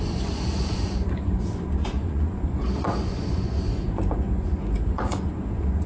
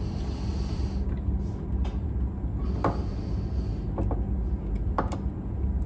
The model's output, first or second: first